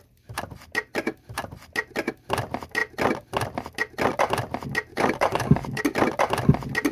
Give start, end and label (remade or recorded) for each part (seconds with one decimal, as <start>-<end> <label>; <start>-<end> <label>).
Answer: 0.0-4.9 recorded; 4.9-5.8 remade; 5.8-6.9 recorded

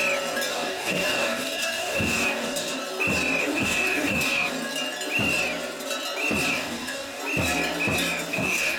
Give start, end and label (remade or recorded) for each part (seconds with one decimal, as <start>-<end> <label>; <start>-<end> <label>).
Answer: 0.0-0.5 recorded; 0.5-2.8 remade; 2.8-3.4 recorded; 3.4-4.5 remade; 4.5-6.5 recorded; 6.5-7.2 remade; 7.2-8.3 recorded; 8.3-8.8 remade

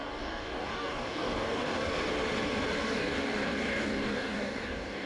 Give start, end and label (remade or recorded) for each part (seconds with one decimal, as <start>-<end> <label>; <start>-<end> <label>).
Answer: 0.0-1.9 remade; 1.9-2.8 recorded; 2.8-5.1 remade

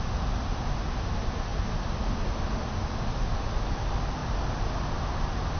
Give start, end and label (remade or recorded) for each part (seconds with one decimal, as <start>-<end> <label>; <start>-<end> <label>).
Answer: 0.0-5.6 recorded